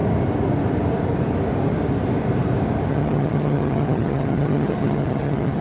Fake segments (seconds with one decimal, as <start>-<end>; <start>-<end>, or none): 2.9-5.6